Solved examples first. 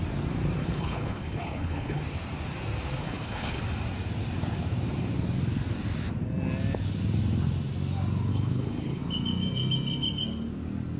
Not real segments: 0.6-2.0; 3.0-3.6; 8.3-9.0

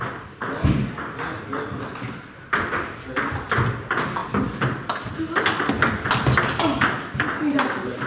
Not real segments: none

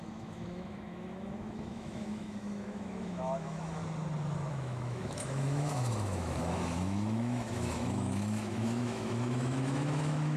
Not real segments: 0.0-3.8; 4.5-10.4

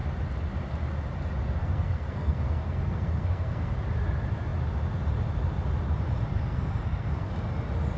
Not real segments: 1.6-3.7; 6.3-7.3

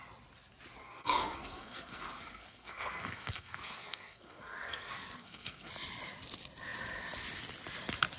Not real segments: 0.8-5.7

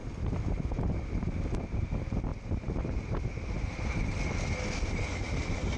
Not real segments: none

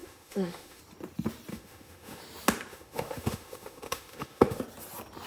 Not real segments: 0.0-0.8; 1.5-2.2; 2.7-4.6

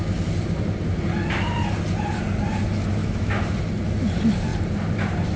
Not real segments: 3.0-3.5